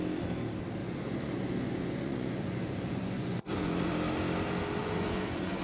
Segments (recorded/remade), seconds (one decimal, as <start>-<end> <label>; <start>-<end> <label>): 0.0-0.8 recorded; 0.8-3.9 remade; 3.9-4.8 recorded; 4.8-5.6 remade